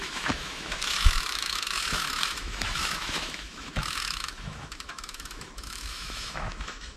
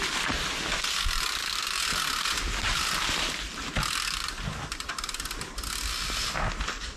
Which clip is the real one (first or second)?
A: second